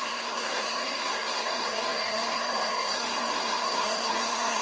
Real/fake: fake